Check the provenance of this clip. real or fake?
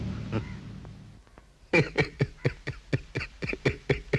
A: real